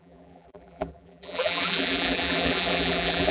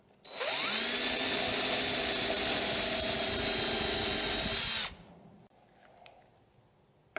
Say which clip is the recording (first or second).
second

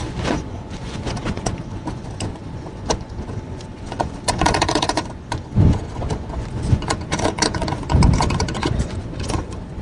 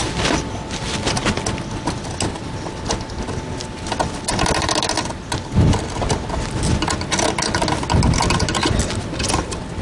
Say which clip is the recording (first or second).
second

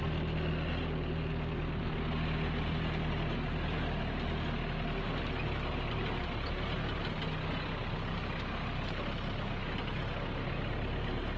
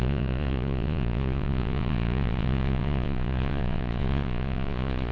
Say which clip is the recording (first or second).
first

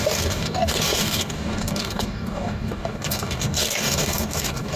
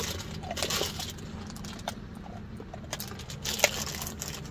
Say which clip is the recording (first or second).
second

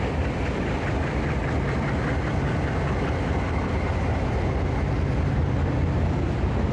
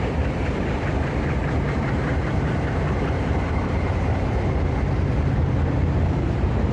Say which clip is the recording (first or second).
first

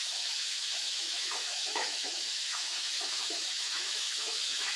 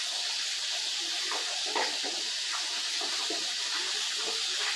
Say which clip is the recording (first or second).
second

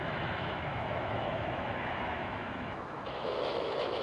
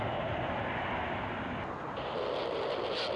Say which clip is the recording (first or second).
second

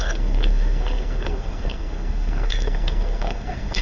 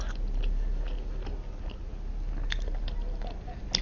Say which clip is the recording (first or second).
second